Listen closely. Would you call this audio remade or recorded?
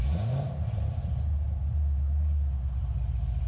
recorded